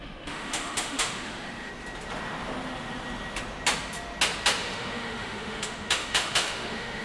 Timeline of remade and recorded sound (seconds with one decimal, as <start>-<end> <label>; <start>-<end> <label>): 0.0-1.7 remade; 1.7-4.6 recorded; 4.6-7.0 remade